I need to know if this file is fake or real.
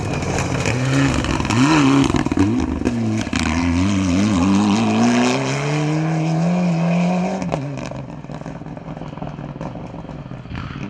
real